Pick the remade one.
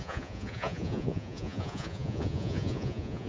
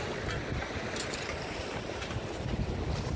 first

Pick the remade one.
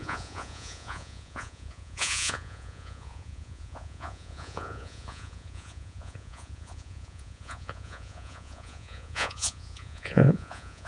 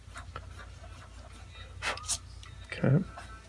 first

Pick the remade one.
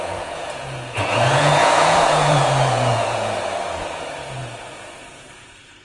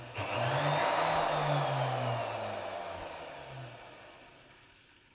first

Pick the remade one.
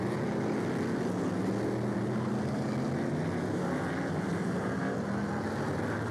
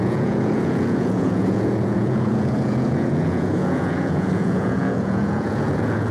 second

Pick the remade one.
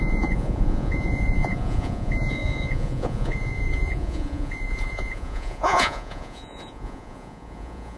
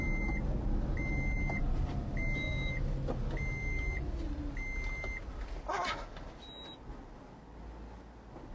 first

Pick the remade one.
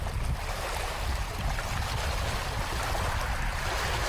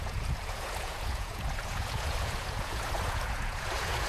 second